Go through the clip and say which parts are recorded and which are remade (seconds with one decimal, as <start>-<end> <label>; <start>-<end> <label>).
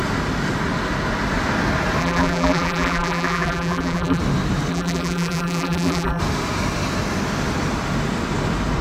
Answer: 0.0-2.0 recorded; 2.0-4.2 remade; 4.2-4.7 recorded; 4.7-6.2 remade; 6.2-8.8 recorded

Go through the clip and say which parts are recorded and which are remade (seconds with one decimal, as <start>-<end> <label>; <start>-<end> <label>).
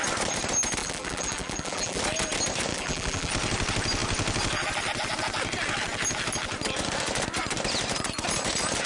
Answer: 0.0-0.8 recorded; 0.8-2.0 remade; 2.0-2.7 recorded; 2.7-3.3 remade; 3.3-8.9 recorded